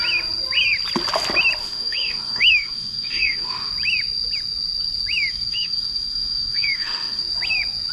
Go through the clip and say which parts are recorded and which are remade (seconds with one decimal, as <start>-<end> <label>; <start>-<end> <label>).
0.0-1.6 recorded; 1.6-3.7 remade; 3.7-5.3 recorded; 5.3-7.2 remade; 7.2-7.9 recorded